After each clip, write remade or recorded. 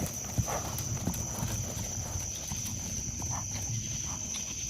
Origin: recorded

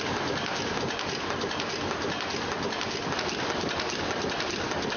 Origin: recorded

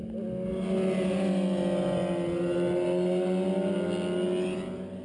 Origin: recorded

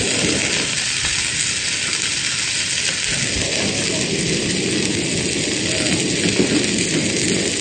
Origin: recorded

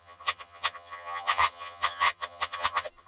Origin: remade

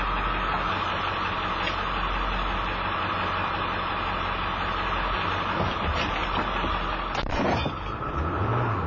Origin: recorded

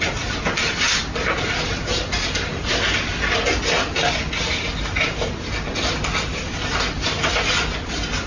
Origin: recorded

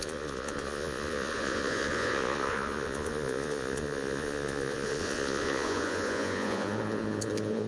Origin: remade